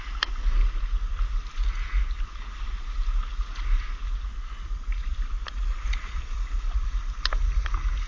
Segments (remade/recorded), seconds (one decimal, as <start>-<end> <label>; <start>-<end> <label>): 0.0-5.1 recorded; 5.1-7.0 remade; 7.0-8.1 recorded